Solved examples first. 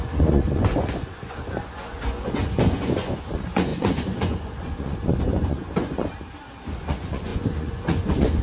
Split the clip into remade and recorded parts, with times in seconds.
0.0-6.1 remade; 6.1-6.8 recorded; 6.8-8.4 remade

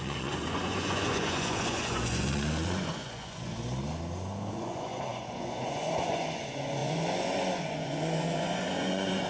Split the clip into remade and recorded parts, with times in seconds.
0.0-3.5 remade; 3.5-4.5 recorded; 4.5-9.3 remade

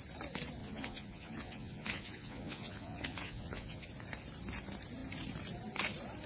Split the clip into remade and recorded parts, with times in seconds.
0.0-0.6 recorded; 0.6-3.9 remade; 3.9-6.3 recorded

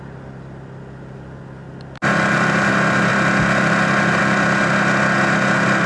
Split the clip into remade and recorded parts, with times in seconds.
0.0-5.9 recorded